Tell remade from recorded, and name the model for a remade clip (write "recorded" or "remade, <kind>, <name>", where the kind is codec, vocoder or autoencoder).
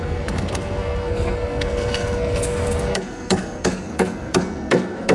remade, codec, SNAC